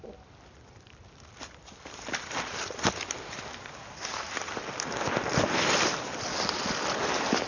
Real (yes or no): yes